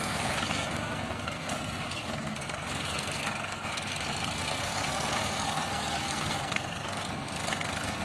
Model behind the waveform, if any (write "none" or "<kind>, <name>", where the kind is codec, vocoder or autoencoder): codec, SNAC